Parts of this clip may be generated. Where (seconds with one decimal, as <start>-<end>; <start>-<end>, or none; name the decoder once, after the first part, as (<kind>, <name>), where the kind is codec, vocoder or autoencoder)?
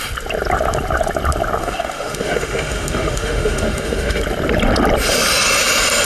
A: 1.6-4.2 (autoencoder, DAC-VAE)